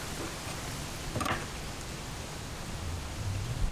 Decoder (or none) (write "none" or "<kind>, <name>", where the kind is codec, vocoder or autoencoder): none